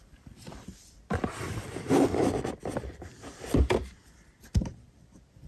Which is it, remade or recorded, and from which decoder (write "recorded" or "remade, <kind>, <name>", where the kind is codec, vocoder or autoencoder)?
remade, vocoder, BigVGAN v2